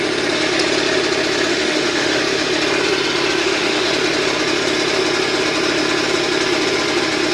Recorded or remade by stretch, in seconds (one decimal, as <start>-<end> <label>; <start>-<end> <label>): 0.0-1.5 recorded; 1.5-2.2 remade; 2.2-3.4 recorded; 3.4-3.9 remade; 3.9-7.3 recorded